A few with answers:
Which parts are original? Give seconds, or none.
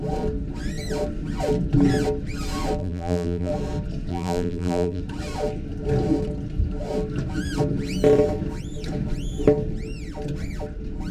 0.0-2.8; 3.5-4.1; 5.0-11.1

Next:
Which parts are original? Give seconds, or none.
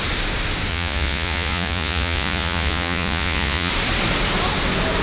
0.0-0.7; 3.7-5.0